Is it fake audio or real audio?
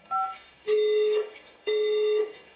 fake